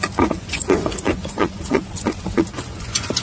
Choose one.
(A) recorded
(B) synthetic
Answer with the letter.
B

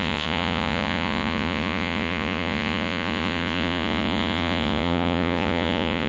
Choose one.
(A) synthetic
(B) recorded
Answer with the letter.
A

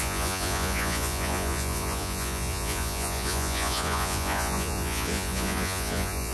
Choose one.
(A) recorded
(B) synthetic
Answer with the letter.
B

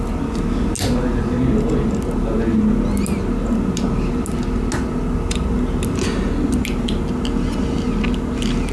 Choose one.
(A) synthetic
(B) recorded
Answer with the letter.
B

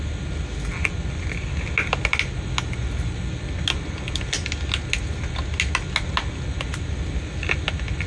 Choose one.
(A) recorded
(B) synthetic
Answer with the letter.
A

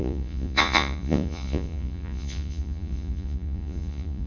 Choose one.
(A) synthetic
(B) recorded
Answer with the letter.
A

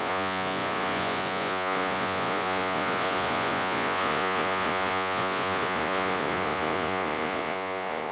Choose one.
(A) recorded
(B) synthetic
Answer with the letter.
B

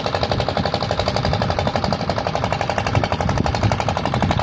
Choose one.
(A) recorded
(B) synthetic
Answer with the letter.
A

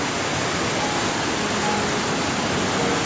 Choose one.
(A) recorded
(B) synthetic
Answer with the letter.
A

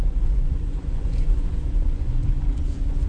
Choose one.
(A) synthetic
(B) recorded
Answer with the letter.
A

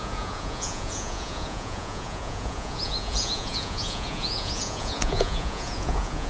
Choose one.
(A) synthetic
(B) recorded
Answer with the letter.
A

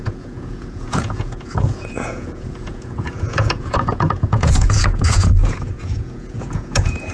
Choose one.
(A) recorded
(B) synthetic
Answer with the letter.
B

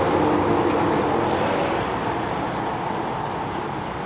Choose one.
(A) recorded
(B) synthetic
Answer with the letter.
A